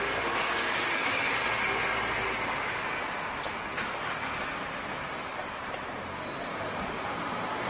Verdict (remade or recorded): recorded